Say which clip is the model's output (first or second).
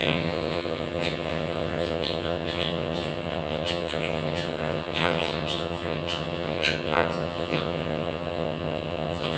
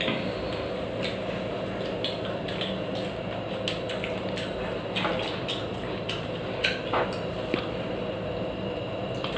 first